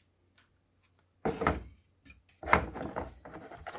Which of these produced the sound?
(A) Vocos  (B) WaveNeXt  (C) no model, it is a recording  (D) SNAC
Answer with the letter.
C